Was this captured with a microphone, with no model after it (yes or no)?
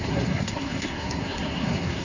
no